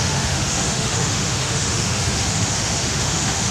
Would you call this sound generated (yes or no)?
yes